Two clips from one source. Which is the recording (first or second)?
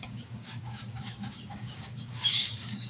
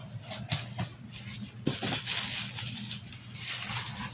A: second